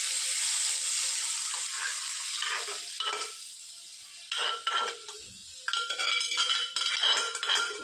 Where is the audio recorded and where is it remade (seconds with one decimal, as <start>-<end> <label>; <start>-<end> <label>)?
0.0-7.8 recorded